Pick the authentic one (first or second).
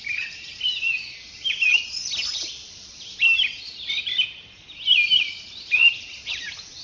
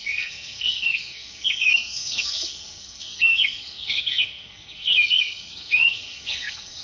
first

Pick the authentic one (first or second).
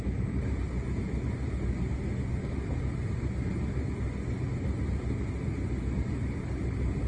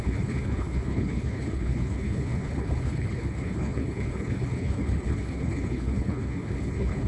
first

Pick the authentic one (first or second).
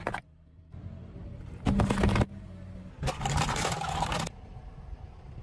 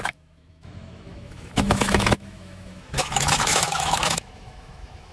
first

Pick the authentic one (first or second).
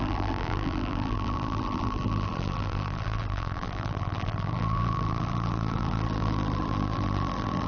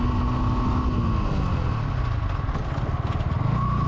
second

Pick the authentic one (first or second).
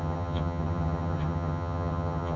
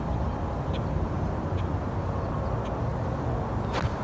second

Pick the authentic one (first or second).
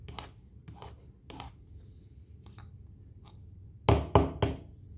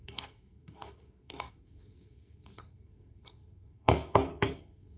first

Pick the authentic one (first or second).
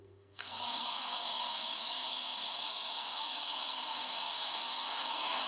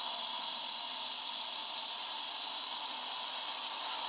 second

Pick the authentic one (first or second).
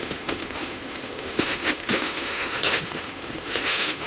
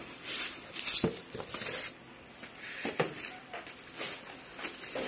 second